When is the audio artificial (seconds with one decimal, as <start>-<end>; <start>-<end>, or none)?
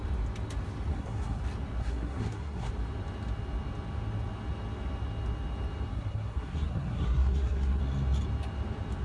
0.9-1.4; 1.8-2.7; 5.9-7.8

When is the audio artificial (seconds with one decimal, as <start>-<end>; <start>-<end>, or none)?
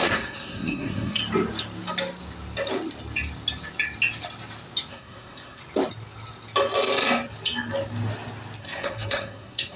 0.0-1.2; 4.9-5.6; 8.6-9.8